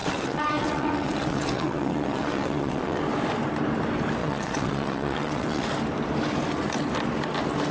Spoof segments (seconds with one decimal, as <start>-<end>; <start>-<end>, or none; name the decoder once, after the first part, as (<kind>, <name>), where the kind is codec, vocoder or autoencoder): 0.0-3.0 (vocoder, WaveNeXt); 4.2-5.7